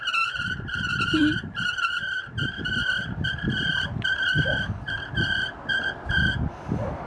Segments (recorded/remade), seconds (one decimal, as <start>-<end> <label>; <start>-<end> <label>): 0.0-7.1 recorded